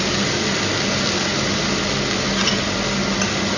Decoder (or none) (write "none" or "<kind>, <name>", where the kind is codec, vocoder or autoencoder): none